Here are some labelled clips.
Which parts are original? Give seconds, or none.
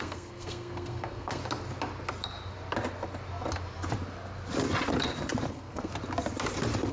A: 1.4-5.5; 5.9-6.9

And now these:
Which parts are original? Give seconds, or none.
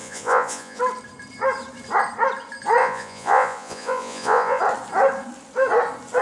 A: 0.8-2.8; 4.6-6.2